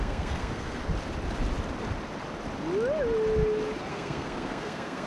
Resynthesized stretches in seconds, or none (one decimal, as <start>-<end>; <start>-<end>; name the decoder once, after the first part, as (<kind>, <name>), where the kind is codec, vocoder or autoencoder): 0.0-0.8 (codec, SNAC); 3.9-5.1